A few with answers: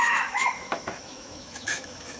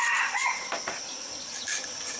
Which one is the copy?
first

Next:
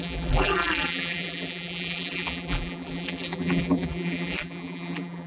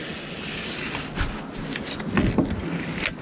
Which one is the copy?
first